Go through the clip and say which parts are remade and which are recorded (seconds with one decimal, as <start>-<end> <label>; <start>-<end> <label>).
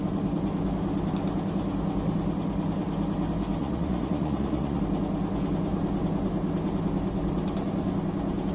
0.0-3.6 recorded; 3.6-4.8 remade; 4.8-8.5 recorded